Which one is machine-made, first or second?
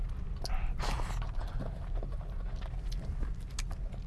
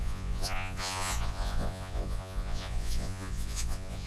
second